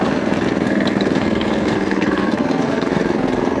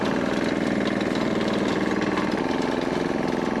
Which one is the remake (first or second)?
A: first